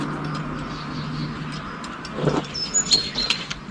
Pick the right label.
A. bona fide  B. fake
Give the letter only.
A